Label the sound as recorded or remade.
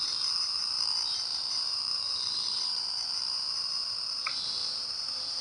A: remade